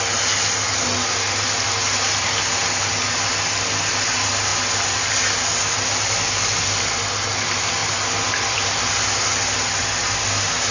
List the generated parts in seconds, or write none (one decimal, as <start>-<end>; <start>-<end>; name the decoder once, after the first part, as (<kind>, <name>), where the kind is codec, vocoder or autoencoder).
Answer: none